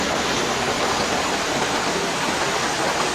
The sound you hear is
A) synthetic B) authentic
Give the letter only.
B